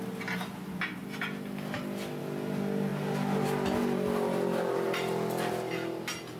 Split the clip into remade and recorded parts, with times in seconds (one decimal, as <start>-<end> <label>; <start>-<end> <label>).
0.0-6.4 recorded